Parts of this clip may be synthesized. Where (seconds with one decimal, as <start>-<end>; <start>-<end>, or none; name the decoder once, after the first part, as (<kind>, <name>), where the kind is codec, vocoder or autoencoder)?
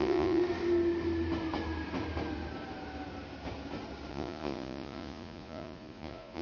0.0-0.4 (vocoder, Vocos); 4.1-6.4